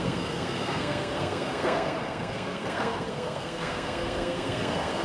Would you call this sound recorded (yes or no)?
no